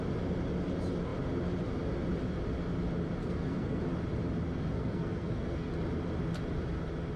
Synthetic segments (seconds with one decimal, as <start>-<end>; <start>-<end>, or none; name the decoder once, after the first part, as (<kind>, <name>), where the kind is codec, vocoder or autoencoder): 3.2-3.8 (codec, SNAC); 4.7-5.7